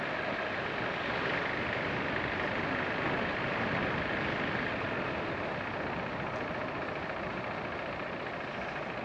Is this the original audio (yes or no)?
yes